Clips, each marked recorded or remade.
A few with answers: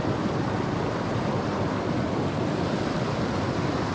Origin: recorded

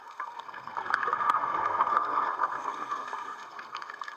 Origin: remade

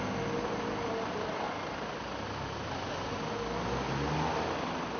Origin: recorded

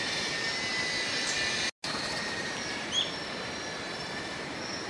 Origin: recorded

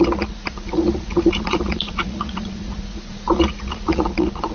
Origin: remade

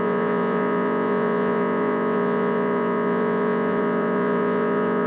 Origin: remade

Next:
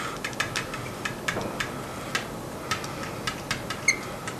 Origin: recorded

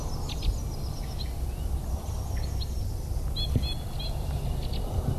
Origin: recorded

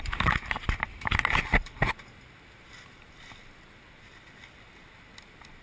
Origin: recorded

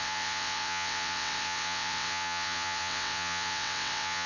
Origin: remade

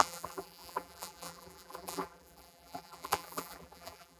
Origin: remade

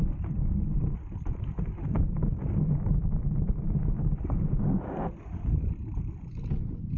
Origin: recorded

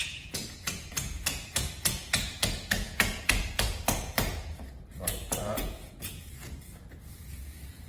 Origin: remade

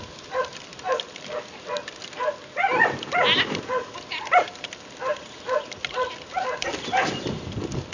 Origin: recorded